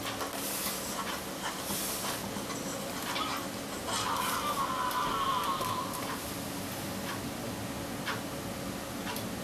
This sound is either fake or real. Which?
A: real